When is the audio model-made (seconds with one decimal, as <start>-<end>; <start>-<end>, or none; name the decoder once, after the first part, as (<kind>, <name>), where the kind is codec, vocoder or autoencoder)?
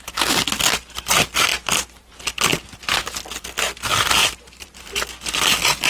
1.5-2.1 (vocoder, BigVGAN v2); 4.2-5.0